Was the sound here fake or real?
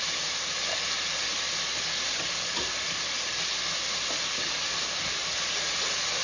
real